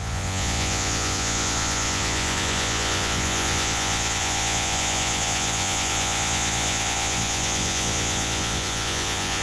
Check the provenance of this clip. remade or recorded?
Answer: remade